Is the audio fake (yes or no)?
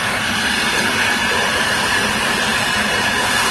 no